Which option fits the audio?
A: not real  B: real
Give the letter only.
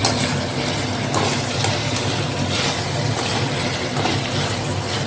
B